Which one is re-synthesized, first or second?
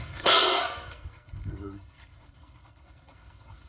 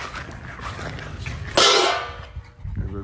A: first